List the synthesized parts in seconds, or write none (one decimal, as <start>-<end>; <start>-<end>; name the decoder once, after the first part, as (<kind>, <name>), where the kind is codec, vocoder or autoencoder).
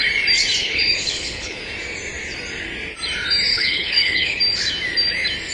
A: 0.6-1.6 (codec, HILCodec); 3.5-4.4